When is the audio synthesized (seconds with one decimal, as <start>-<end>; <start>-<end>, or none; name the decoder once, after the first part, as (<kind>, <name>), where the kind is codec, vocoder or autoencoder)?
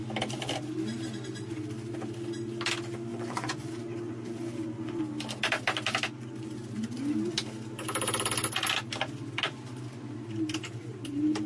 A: 3.1-5.0 (vocoder, Vocos)